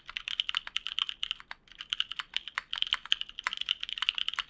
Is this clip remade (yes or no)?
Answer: no